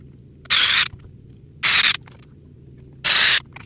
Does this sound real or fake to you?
real